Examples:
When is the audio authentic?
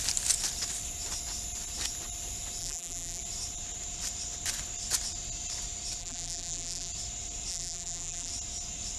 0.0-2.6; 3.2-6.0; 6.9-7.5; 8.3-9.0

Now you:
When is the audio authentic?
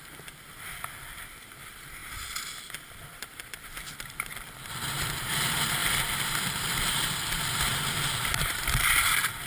7.7-8.4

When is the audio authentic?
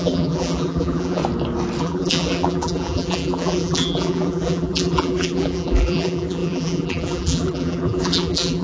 1.2-1.8